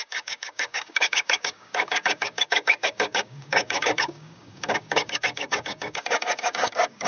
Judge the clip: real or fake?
fake